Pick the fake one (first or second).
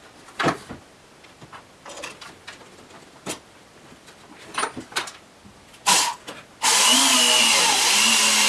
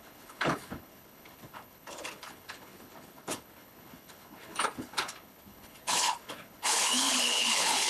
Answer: second